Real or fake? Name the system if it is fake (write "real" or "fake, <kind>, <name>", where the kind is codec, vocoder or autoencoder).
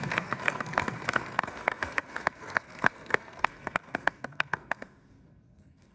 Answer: fake, codec, SNAC